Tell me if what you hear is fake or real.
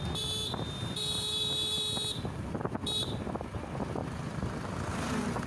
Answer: real